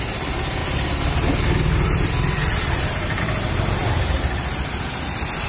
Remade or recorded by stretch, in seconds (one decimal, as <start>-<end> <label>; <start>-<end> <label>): 0.0-5.5 remade

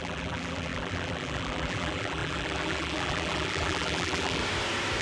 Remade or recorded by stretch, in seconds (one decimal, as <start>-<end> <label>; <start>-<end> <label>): 0.0-4.4 remade; 4.4-5.0 recorded

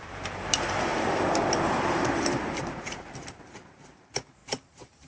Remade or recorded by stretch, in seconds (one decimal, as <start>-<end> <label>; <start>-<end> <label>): 0.0-5.1 remade

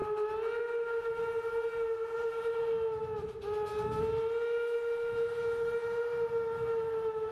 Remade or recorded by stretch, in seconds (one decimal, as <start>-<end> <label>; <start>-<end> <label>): 0.0-7.3 recorded

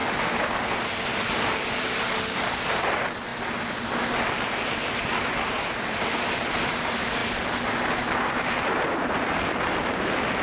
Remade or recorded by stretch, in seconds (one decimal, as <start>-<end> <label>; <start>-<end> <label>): 0.0-1.3 recorded; 1.3-3.3 remade; 3.3-5.2 recorded; 5.2-7.2 remade; 7.2-9.8 recorded; 9.8-10.4 remade

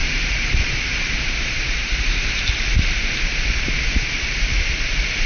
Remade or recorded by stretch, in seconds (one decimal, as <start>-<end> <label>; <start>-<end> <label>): 0.0-3.2 remade; 3.2-5.3 recorded